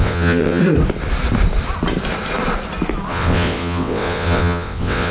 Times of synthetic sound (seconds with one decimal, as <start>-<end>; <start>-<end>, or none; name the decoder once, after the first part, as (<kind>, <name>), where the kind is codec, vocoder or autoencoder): 0.0-0.6 (vocoder, WaveNeXt); 3.1-5.1